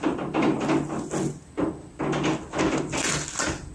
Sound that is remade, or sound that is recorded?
recorded